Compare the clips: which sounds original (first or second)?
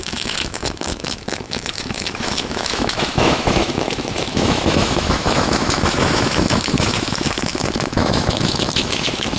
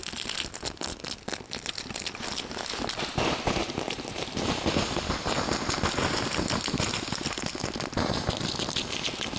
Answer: second